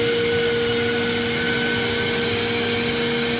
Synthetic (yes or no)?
no